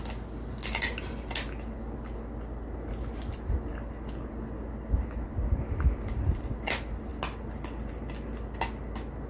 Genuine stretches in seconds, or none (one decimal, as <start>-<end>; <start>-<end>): 0.0-9.3